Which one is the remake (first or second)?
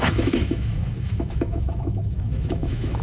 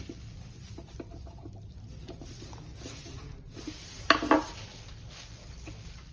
first